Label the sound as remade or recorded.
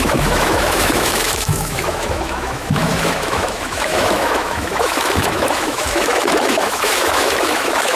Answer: remade